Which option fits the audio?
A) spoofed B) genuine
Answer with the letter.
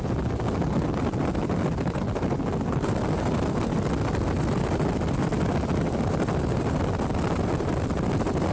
B